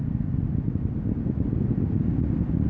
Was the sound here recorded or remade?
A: recorded